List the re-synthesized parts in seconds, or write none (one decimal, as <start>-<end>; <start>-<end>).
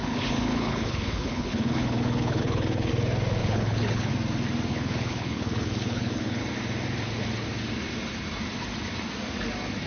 0.0-2.9; 3.4-4.1; 4.7-6.4